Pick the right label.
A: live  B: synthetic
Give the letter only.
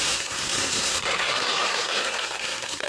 B